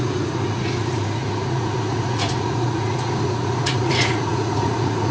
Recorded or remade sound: remade